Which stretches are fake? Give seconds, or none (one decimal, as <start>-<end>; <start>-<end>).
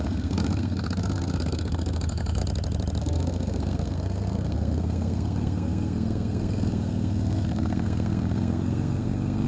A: 0.0-2.4; 3.0-9.5